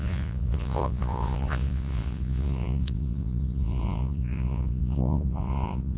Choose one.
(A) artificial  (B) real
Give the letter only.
A